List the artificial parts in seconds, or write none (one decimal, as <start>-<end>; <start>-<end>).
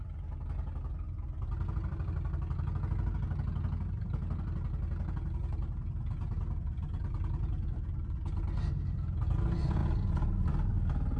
none